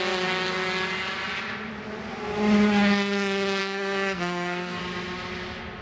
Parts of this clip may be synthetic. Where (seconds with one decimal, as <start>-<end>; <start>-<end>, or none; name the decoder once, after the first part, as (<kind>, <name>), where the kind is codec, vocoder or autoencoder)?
3.6-4.8 (codec, SNAC)